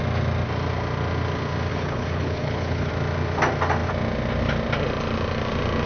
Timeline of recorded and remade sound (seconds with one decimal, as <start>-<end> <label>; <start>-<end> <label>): 0.0-1.7 recorded; 1.7-2.9 remade; 2.9-5.9 recorded